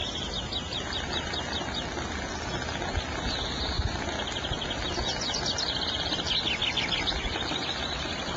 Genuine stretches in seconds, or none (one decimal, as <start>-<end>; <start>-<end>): 1.4-8.4